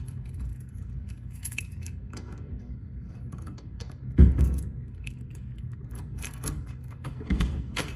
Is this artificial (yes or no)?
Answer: yes